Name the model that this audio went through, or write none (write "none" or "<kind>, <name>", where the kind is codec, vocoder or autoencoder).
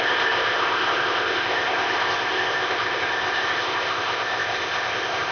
codec, ZipCodec